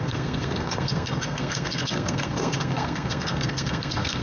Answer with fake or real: fake